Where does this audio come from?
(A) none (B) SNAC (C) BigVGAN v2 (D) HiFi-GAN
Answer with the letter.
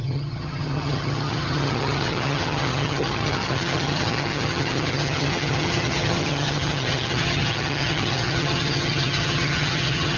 D